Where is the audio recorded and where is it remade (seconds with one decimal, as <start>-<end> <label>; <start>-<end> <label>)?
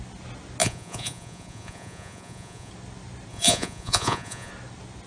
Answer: 0.0-0.6 recorded; 0.6-2.7 remade; 2.7-3.3 recorded; 3.3-4.5 remade; 4.5-5.1 recorded